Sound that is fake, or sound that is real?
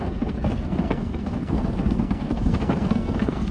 fake